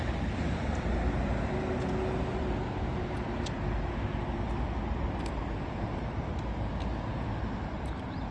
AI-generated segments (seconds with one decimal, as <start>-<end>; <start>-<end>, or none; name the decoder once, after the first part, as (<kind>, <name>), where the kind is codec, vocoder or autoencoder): none